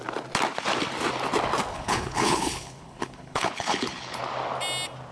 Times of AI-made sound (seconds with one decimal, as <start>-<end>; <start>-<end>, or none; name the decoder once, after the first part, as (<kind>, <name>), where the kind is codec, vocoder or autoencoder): 1.7-4.2 (codec, HILCodec)